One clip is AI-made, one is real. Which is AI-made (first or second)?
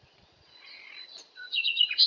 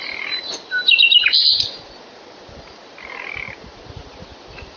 first